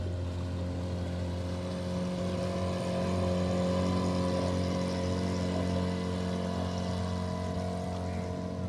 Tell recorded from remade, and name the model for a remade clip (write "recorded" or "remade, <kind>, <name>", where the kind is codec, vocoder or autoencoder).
recorded